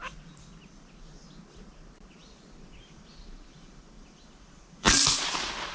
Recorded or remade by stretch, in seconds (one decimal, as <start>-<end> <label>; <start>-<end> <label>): 0.0-2.2 recorded; 2.2-5.1 remade; 5.1-5.7 recorded